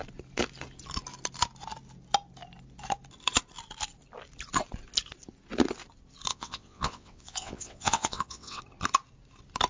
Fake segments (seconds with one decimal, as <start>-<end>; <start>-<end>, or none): 6.3-8.6